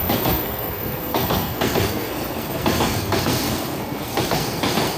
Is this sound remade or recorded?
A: remade